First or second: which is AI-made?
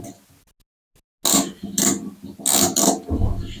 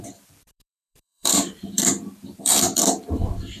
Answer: second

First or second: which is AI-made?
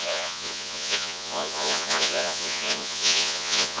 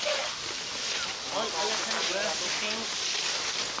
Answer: first